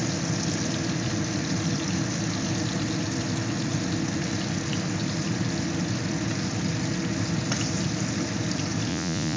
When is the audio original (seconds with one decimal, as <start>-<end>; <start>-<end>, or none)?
0.0-8.9